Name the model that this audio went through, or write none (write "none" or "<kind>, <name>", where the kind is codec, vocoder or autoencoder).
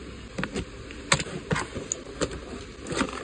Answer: none